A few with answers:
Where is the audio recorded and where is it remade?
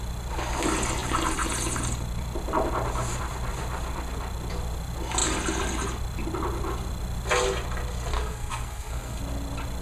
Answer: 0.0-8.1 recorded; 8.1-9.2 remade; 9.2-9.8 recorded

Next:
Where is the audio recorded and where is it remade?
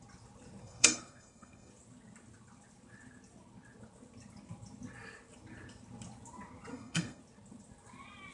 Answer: 0.0-0.6 recorded; 0.6-1.7 remade; 1.7-6.7 recorded; 6.7-7.2 remade; 7.2-8.3 recorded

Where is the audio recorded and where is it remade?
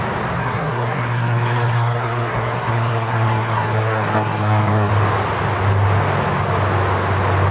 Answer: 0.0-0.4 recorded; 0.4-4.9 remade; 4.9-7.5 recorded